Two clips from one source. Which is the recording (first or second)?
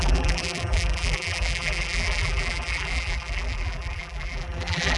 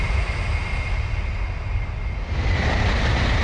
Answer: second